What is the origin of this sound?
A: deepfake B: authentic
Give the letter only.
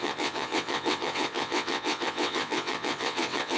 A